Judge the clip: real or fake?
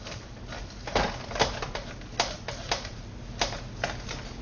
real